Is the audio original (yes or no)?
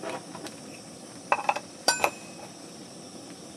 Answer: no